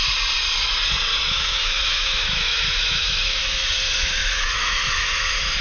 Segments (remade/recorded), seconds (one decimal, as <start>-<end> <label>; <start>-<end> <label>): 0.0-1.3 recorded; 1.3-5.6 remade